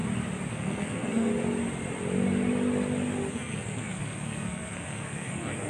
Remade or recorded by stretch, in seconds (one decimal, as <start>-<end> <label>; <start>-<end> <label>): 0.0-0.5 recorded; 0.5-1.3 remade; 1.3-3.3 recorded; 3.3-5.7 remade